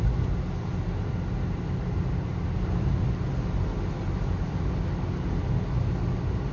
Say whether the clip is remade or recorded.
recorded